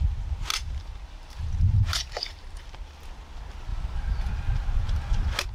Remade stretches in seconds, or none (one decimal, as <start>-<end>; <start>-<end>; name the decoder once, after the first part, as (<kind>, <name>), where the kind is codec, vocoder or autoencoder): 0.5-2.6 (vocoder, BigVGAN v2); 3.7-4.3